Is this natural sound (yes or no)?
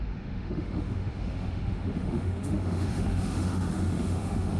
no